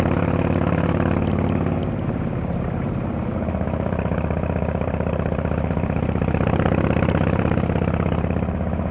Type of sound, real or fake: fake